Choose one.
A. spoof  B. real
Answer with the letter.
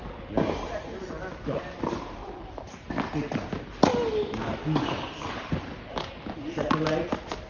B